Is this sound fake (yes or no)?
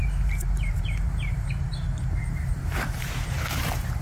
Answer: yes